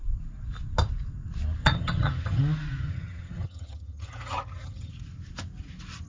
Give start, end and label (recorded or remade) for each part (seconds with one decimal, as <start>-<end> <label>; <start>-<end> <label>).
0.0-1.6 recorded; 1.6-2.4 remade; 2.4-2.8 recorded; 2.8-4.9 remade; 4.9-6.1 recorded